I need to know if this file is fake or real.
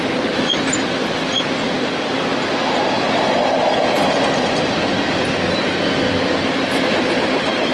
real